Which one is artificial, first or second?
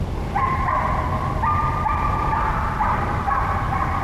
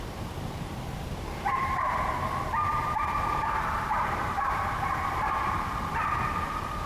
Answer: second